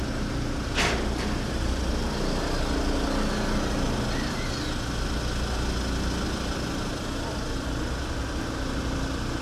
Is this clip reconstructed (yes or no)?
no